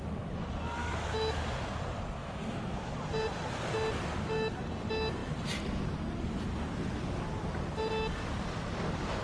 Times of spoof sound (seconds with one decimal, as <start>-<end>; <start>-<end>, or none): 0.8-1.4; 2.2-2.9